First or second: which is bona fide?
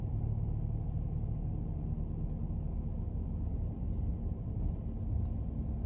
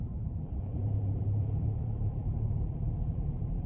first